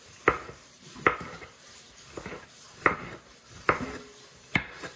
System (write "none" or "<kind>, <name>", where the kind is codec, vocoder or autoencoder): vocoder, BigVGAN v2